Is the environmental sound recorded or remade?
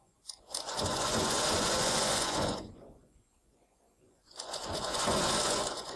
remade